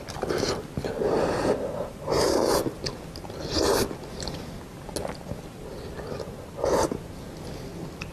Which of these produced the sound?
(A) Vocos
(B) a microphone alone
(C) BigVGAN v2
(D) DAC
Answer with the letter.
B